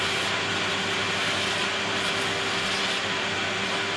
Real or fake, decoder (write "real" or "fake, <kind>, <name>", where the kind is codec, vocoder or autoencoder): real